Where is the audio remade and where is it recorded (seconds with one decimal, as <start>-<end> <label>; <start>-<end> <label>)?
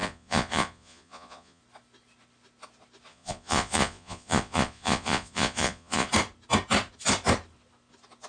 0.0-1.6 remade; 1.6-3.1 recorded; 3.1-6.1 remade; 6.1-8.3 recorded